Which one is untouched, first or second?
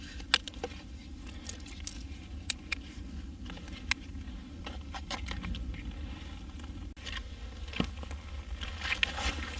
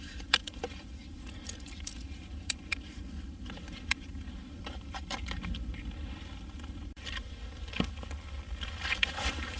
first